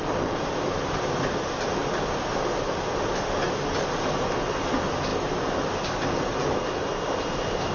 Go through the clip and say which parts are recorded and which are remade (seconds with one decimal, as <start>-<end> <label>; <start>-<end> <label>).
0.0-1.8 remade; 1.8-4.6 recorded; 4.6-5.1 remade; 5.1-5.6 recorded; 5.6-6.4 remade; 6.4-7.3 recorded; 7.3-7.7 remade